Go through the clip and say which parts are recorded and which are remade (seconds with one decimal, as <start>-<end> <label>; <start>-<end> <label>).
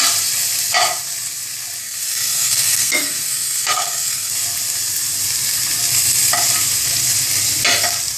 0.0-1.8 recorded; 1.8-4.3 remade; 4.3-8.2 recorded